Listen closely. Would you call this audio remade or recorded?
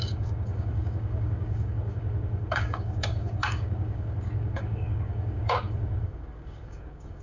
remade